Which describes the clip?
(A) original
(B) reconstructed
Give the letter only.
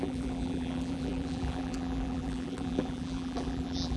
B